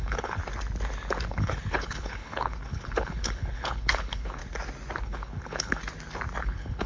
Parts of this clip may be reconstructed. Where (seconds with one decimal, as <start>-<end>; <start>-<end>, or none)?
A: 0.0-0.4; 1.3-4.4; 5.0-5.8; 6.4-6.9